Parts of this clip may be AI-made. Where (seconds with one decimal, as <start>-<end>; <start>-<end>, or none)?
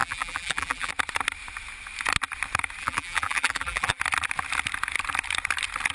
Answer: 0.0-0.9; 2.8-4.0